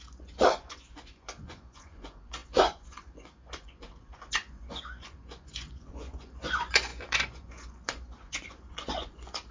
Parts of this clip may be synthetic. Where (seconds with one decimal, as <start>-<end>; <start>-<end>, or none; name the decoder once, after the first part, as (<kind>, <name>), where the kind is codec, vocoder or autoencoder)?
0.0-9.5 (vocoder, Vocos)